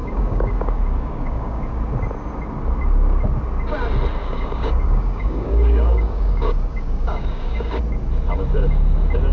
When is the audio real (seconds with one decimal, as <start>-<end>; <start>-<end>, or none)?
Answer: 1.6-4.2; 7.8-9.3